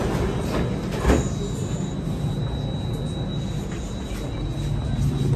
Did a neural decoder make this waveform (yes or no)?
no